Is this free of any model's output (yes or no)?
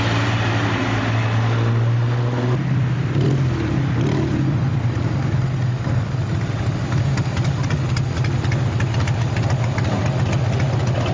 yes